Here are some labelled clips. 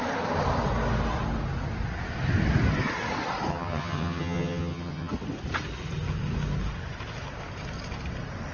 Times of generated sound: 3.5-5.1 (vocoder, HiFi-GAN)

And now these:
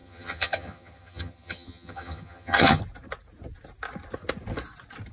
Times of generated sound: 0.0-2.8 (vocoder, HiFi-GAN)

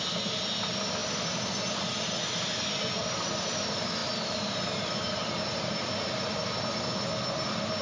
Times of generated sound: none

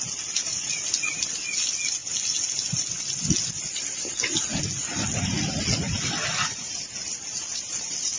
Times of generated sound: none

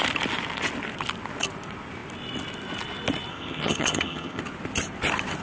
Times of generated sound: 3.3-4.4 (vocoder, HiFi-GAN)

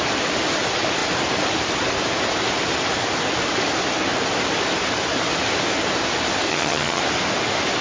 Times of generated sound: 6.5-7.0 (vocoder, HiFi-GAN)

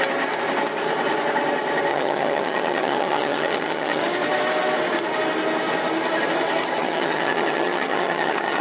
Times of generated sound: 1.9-4.0 (vocoder, HiFi-GAN); 6.8-8.6

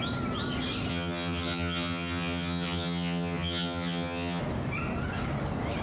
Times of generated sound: 0.9-4.4 (vocoder, HiFi-GAN)